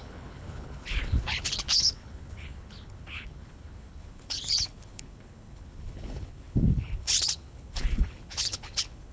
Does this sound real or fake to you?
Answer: fake